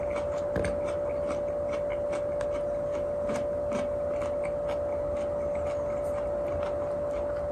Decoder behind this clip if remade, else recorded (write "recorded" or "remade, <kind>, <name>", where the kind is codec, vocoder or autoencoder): recorded